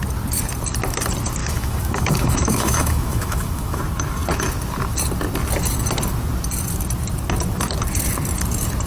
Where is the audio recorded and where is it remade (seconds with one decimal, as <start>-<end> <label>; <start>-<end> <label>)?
0.0-1.4 recorded; 1.4-3.8 remade; 3.8-8.9 recorded